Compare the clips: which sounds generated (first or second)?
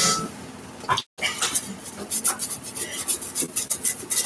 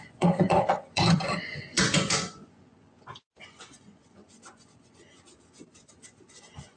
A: second